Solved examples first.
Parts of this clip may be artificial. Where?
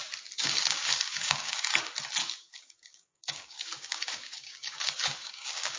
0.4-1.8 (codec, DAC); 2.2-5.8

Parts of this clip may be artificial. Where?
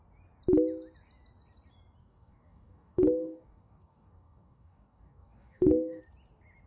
2.0-6.0 (codec, DAC)